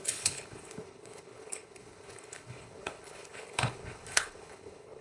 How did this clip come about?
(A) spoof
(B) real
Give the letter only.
A